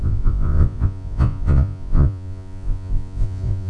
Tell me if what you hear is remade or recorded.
remade